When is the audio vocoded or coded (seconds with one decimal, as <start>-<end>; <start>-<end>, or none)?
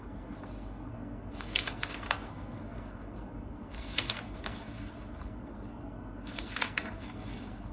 0.0-7.7